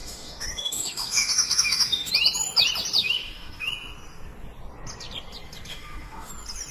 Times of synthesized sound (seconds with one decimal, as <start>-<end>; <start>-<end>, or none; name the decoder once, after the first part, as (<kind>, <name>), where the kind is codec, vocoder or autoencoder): 0.0-2.1 (autoencoder, DAC-VAE); 3.0-3.7; 5.7-6.3